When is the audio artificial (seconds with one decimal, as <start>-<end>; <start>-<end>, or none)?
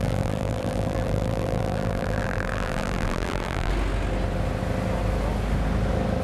0.0-3.7